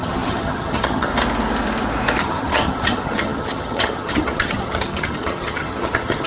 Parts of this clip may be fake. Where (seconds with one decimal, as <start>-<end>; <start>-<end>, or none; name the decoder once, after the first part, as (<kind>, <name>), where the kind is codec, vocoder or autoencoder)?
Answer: 0.0-1.1 (vocoder, HiFi-GAN); 2.2-6.3